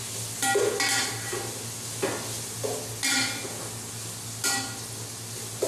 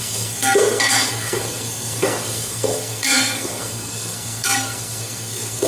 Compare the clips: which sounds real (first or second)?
first